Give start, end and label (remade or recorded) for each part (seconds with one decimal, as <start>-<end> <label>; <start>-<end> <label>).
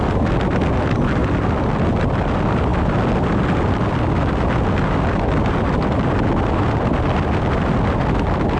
0.0-8.6 recorded